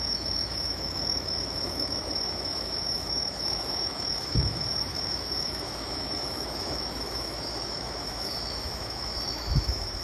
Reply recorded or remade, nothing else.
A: remade